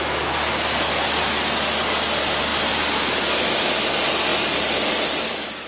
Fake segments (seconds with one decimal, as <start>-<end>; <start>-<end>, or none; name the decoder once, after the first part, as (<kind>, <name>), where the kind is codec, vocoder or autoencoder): none